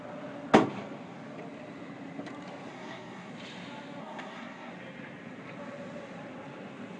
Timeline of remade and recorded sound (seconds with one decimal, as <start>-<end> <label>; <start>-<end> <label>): 0.0-2.7 recorded; 2.7-3.3 remade; 3.3-4.0 recorded; 4.0-4.7 remade; 4.7-7.0 recorded